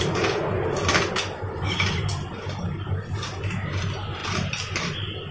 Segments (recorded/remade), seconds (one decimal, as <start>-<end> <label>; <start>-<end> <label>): 0.0-5.3 recorded